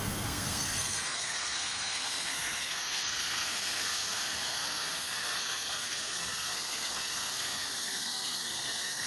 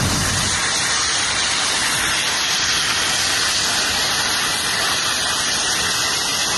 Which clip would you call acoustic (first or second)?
second